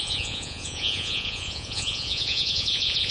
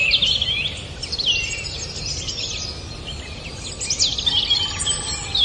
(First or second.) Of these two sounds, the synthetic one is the first